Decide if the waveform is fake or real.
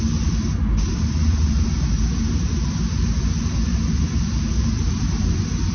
fake